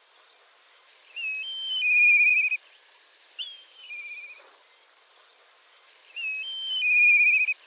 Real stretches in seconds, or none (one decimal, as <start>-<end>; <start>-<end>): 0.0-7.7